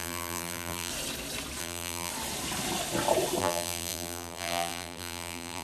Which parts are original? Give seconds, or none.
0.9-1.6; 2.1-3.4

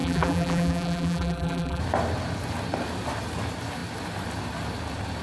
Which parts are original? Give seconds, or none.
1.8-5.2

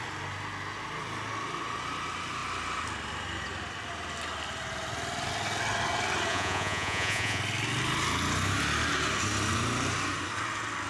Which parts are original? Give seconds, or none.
0.0-6.3; 7.4-10.9

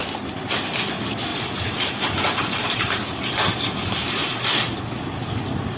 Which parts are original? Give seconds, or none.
0.0-1.3; 4.8-5.8